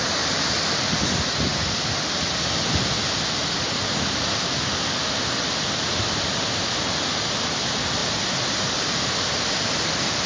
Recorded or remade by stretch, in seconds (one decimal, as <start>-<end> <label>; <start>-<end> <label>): 0.0-10.3 recorded